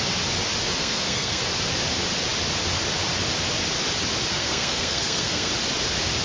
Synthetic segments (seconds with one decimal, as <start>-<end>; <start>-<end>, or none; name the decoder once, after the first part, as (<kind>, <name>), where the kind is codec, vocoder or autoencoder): 0.8-1.4 (codec, SNAC); 4.3-5.5